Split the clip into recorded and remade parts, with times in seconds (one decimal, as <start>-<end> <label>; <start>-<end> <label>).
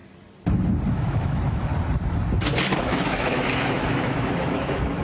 0.0-0.9 recorded; 0.9-1.7 remade; 1.7-2.8 recorded; 2.8-5.0 remade